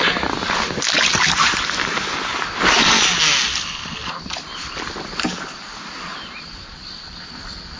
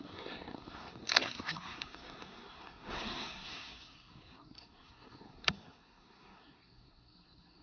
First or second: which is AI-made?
second